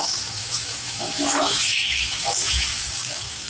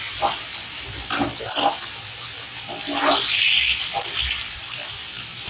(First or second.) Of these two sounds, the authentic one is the second